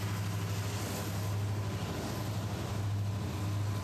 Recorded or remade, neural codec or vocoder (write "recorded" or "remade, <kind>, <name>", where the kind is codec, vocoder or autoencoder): recorded